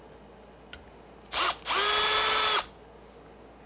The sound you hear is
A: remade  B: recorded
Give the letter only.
B